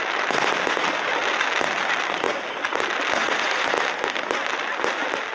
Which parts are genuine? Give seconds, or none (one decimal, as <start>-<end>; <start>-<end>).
0.0-3.2; 3.7-5.3